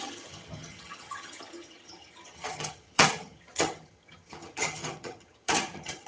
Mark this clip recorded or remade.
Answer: remade